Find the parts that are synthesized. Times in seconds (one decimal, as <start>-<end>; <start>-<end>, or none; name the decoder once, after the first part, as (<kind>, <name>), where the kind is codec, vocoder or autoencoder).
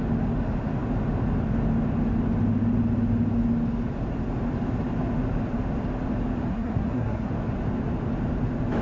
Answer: 6.5-7.3 (codec, SNAC)